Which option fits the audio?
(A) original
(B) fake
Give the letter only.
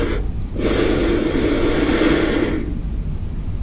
A